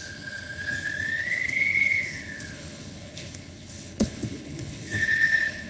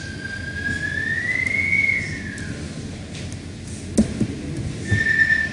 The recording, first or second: second